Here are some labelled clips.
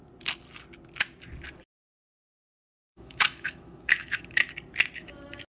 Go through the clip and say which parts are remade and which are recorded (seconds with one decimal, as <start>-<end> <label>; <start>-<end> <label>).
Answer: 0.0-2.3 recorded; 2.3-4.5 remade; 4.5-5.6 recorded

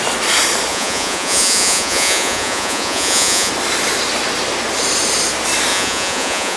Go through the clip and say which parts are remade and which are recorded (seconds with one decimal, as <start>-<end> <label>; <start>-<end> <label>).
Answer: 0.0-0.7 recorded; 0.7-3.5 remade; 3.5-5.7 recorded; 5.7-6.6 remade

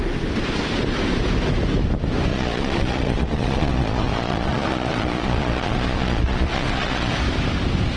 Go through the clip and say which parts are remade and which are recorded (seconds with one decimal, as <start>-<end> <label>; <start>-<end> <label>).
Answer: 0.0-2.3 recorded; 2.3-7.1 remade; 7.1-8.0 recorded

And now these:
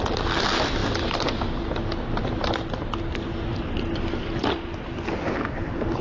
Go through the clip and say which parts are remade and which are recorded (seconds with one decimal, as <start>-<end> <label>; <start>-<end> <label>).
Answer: 0.0-6.0 remade